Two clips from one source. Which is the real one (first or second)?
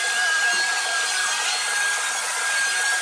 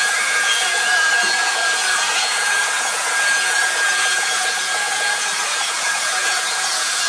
first